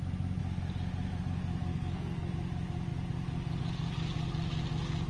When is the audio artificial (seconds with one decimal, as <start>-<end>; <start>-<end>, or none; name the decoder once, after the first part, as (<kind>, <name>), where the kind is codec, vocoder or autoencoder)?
1.7-2.3 (codec, SNAC)